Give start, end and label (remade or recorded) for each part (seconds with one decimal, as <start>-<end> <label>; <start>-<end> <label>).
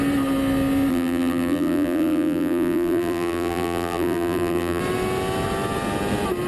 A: 0.0-0.9 recorded; 0.9-4.8 remade; 4.8-6.5 recorded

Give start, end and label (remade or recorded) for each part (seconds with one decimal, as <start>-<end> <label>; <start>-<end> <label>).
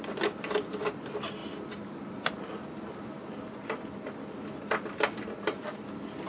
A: 0.0-6.3 recorded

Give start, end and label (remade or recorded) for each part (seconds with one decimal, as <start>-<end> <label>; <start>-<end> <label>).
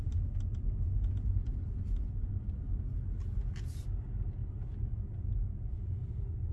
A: 0.0-6.5 recorded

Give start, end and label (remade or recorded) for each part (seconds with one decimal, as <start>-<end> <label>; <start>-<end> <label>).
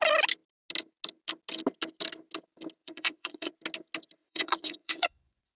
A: 0.0-2.8 recorded; 2.8-3.5 remade; 3.5-4.2 recorded; 4.2-5.6 remade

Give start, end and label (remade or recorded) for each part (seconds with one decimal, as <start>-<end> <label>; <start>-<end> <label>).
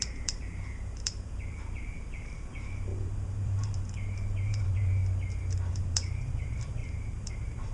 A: 0.0-5.0 remade; 5.0-5.7 recorded; 5.7-7.7 remade